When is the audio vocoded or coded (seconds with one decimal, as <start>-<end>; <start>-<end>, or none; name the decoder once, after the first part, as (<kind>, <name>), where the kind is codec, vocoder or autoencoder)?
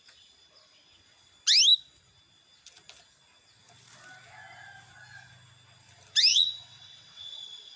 6.3-7.8 (vocoder, WaveNeXt)